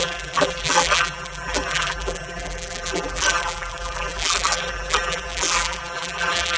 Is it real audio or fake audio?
fake